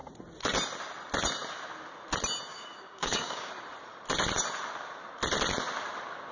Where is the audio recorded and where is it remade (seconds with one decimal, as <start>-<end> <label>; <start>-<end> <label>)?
0.0-2.5 recorded; 2.5-3.5 remade; 3.5-6.3 recorded

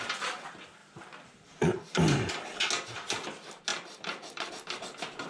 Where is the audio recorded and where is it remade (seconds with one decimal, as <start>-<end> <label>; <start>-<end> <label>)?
0.0-0.8 recorded; 0.8-2.3 remade; 2.3-3.7 recorded; 3.7-4.5 remade; 4.5-5.3 recorded

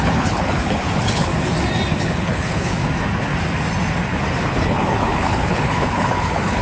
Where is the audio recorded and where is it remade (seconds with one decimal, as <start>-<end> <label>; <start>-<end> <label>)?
0.0-1.3 remade; 1.3-2.0 recorded; 2.0-2.8 remade; 2.8-4.5 recorded; 4.5-6.6 remade

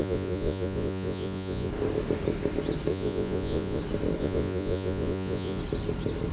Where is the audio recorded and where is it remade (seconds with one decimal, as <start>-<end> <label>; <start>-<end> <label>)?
0.0-1.7 remade; 1.7-2.9 recorded; 2.9-3.8 remade; 3.8-4.2 recorded; 4.2-5.6 remade; 5.6-6.3 recorded

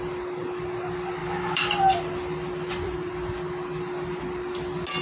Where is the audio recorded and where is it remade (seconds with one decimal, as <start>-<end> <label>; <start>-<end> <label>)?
0.0-5.0 recorded

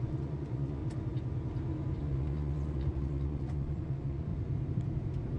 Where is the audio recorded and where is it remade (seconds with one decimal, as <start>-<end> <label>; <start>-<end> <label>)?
0.0-0.8 remade; 0.8-2.0 recorded; 2.0-4.3 remade; 4.3-5.4 recorded